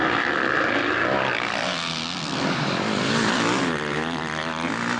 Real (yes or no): yes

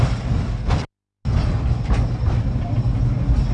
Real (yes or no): yes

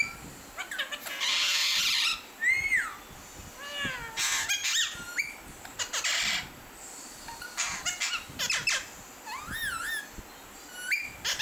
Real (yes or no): yes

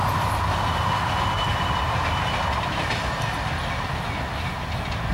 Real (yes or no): yes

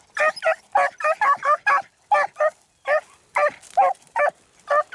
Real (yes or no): yes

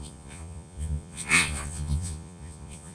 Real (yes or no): no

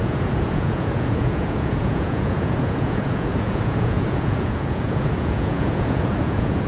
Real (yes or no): no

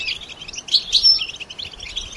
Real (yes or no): yes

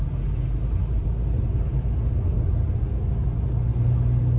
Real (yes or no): yes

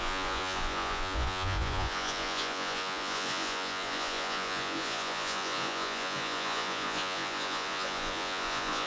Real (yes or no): no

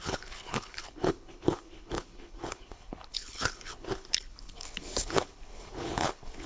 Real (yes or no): no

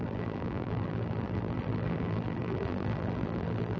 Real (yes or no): no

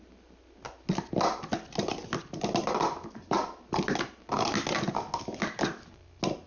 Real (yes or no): yes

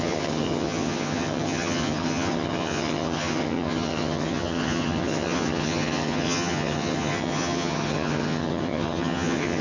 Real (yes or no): no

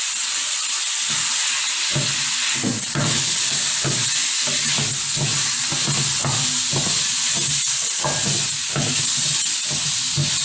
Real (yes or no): yes